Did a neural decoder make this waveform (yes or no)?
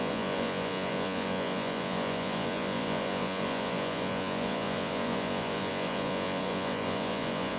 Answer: yes